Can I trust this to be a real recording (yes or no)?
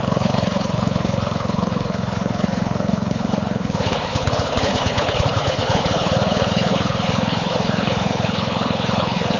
no